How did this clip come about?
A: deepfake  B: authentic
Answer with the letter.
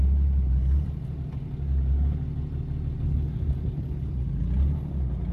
B